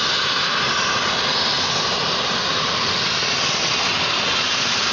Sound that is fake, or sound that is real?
real